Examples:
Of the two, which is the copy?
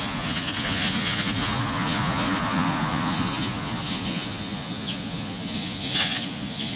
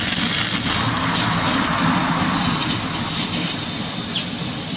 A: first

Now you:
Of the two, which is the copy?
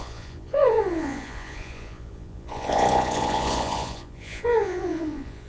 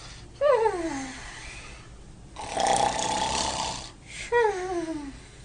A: first